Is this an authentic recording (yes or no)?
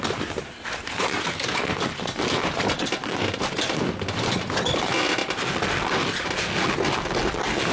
yes